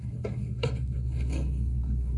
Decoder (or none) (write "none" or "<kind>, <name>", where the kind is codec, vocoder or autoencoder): codec, SNAC